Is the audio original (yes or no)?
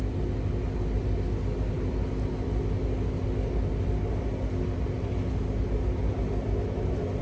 yes